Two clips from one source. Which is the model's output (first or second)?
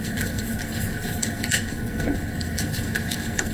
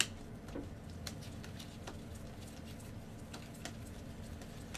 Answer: first